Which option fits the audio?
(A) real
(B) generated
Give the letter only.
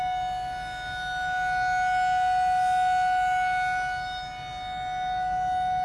A